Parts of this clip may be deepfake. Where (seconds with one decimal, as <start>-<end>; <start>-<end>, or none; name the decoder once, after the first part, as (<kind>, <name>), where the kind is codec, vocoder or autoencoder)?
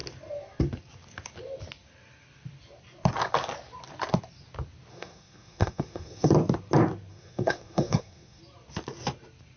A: 4.9-6.3 (codec, SNAC); 7.1-8.4